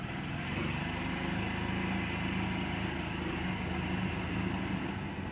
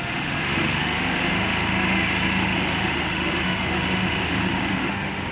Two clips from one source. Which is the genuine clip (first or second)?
first